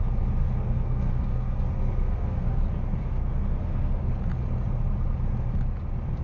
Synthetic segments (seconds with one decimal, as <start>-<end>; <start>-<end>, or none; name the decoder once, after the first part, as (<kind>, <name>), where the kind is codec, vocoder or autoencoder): 0.4-2.6 (codec, SNAC); 3.0-4.1